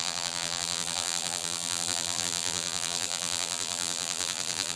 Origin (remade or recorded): remade